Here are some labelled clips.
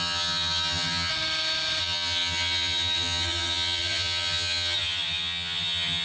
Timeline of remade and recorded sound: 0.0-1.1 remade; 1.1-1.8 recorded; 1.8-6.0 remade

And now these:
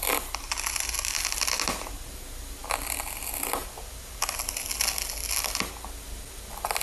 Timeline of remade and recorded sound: 0.0-6.8 recorded

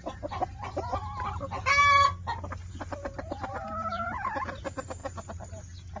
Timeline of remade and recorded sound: 0.0-6.0 recorded

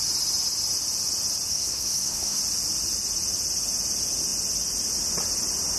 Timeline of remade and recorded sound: 0.0-1.5 recorded; 1.5-2.4 remade; 2.4-5.8 recorded

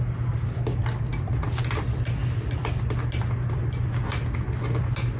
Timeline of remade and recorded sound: 0.0-5.2 recorded

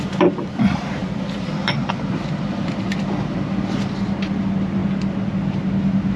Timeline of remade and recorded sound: 0.0-6.2 recorded